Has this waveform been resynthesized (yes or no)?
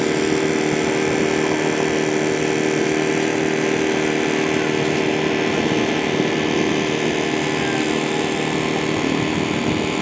no